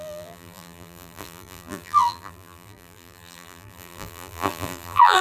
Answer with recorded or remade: remade